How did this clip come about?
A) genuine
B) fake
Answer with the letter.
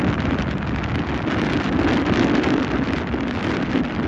A